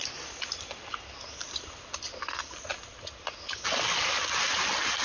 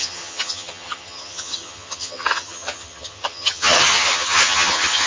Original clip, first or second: first